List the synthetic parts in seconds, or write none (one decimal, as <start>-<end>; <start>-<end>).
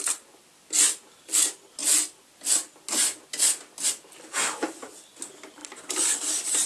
none